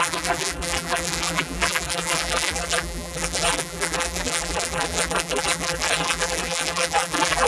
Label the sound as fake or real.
fake